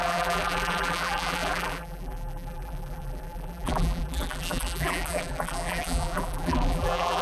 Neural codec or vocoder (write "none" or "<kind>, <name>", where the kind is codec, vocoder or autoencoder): vocoder, BigVGAN v2